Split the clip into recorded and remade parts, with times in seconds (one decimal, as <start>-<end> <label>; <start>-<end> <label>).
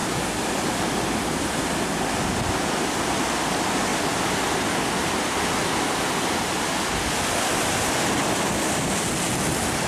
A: 0.0-9.9 recorded